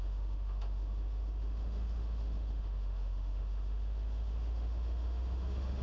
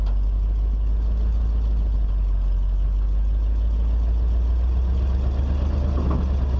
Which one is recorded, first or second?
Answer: second